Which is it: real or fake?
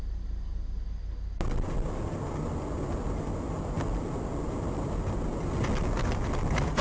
real